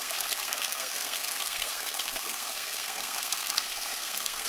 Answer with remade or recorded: remade